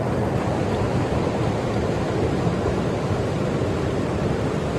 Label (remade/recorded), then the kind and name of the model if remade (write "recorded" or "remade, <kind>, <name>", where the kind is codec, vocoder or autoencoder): recorded